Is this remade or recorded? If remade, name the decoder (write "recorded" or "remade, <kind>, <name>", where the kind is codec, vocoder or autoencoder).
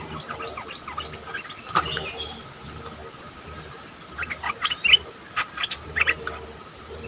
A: recorded